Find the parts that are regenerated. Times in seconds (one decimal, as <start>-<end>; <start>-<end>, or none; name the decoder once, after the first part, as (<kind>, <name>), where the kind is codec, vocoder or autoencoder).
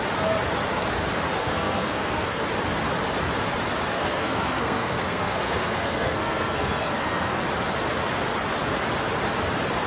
1.4-2.4 (codec, SNAC); 3.9-7.4